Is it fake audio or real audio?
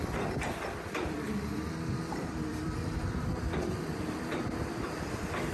fake